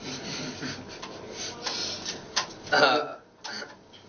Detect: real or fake real